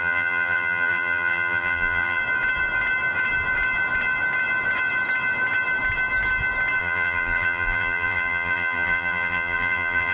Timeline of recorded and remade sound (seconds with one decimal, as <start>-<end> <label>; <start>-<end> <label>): 0.0-2.2 remade; 2.2-6.8 recorded; 6.8-10.1 remade